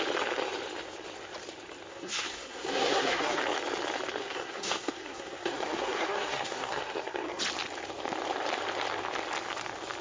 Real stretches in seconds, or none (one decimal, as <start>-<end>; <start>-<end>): 0.0-1.9; 3.4-4.2; 7.4-10.0